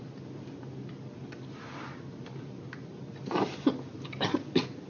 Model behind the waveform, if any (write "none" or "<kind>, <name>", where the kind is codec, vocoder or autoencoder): none